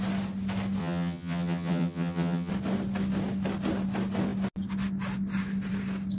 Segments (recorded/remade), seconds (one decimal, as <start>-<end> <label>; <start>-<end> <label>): 0.0-0.8 recorded; 0.8-2.5 remade; 2.5-6.2 recorded